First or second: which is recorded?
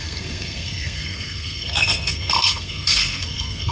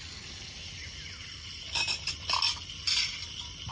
second